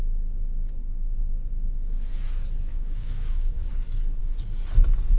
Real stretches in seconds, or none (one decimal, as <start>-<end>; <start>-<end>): 0.0-2.7; 3.7-5.2